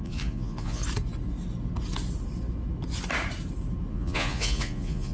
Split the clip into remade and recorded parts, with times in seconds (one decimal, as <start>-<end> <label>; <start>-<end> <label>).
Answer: 0.0-0.8 remade; 0.8-3.9 recorded; 3.9-5.1 remade